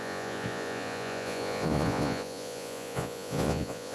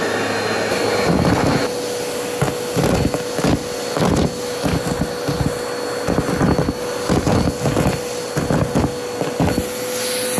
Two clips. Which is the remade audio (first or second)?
first